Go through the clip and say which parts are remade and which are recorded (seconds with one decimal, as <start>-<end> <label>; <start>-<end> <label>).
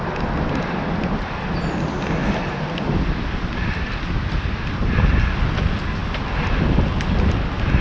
0.0-7.8 recorded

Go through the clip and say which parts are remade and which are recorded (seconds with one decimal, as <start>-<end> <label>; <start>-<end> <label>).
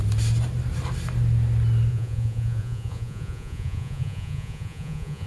0.0-1.9 recorded; 1.9-5.3 remade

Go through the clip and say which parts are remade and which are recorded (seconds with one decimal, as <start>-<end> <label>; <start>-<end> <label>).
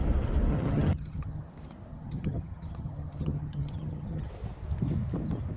0.0-0.5 recorded; 0.5-1.5 remade; 1.5-1.9 recorded; 1.9-4.3 remade; 4.3-5.6 recorded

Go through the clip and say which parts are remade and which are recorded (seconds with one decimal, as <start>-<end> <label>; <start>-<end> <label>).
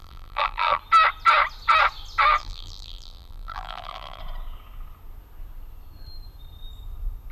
0.0-0.8 remade; 0.8-2.4 recorded; 2.4-4.2 remade; 4.2-7.3 recorded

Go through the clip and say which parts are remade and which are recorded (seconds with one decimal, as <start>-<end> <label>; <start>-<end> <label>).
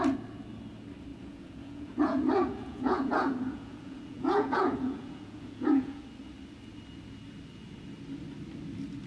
0.0-1.1 recorded; 1.1-6.0 remade; 6.0-9.1 recorded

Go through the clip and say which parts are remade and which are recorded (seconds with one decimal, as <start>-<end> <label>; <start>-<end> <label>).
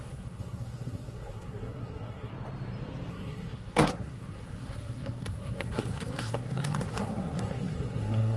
0.0-2.3 remade; 2.3-3.1 recorded; 3.1-8.4 remade